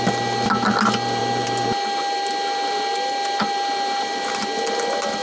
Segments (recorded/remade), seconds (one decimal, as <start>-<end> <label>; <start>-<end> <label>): 0.0-5.2 recorded